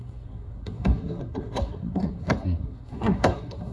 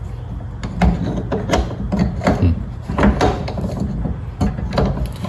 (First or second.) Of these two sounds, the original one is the second